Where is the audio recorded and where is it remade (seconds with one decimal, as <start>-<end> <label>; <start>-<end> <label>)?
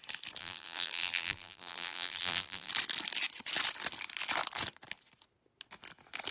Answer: 0.0-0.4 recorded; 0.4-2.7 remade; 2.7-6.3 recorded